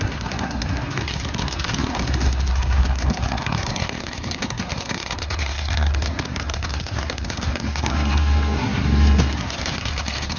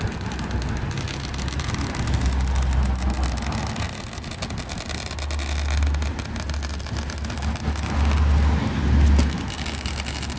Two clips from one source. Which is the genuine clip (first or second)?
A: second